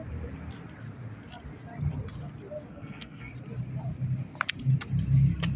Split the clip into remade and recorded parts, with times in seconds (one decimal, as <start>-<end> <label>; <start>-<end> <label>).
0.0-2.7 recorded; 2.7-3.3 remade; 3.3-5.6 recorded